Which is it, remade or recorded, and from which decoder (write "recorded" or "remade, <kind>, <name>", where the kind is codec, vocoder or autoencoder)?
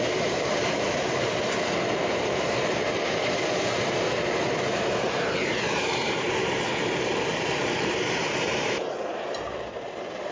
remade, vocoder, BigVGAN v2